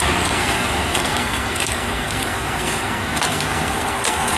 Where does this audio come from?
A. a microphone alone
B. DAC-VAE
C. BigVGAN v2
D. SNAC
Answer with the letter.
D